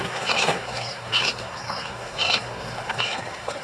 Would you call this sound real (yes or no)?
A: no